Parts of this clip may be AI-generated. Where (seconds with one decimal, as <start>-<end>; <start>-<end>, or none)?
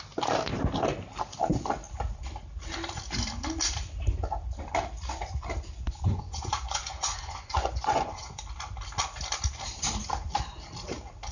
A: 6.1-8.4